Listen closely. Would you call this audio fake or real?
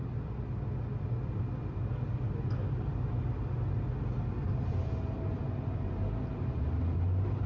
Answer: real